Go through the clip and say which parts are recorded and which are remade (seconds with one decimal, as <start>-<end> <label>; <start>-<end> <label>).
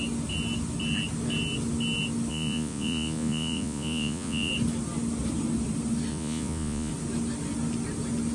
0.0-2.3 recorded; 2.3-4.5 remade; 4.5-6.1 recorded; 6.1-6.9 remade; 6.9-8.3 recorded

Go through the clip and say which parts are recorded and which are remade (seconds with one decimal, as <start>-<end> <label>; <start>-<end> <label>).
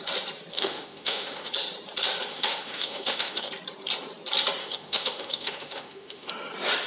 0.0-0.5 recorded; 0.5-1.5 remade; 1.5-2.3 recorded; 2.3-3.5 remade; 3.5-4.6 recorded; 4.6-6.3 remade; 6.3-6.9 recorded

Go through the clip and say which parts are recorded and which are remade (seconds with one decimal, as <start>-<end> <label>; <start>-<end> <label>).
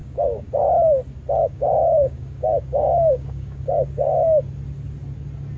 0.0-0.5 remade; 0.5-1.4 recorded; 1.4-4.4 remade; 4.4-5.6 recorded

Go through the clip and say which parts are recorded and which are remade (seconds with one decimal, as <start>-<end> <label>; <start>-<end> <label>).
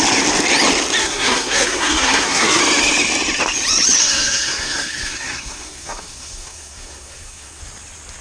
0.0-1.0 recorded; 1.0-2.6 remade; 2.6-4.0 recorded; 4.0-7.6 remade; 7.6-8.2 recorded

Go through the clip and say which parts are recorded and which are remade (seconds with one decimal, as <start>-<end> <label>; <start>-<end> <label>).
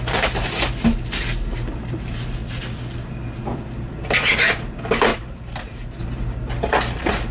0.0-3.5 recorded; 3.5-4.3 remade; 4.3-5.1 recorded; 5.1-6.0 remade; 6.0-7.3 recorded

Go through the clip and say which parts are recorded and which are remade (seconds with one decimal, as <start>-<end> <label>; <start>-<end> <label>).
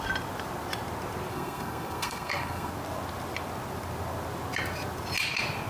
0.0-1.3 recorded; 1.3-2.7 remade; 2.7-5.7 recorded